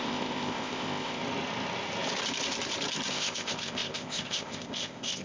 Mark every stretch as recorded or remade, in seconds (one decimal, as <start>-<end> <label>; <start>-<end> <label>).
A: 0.0-1.2 remade; 1.2-3.1 recorded; 3.1-5.2 remade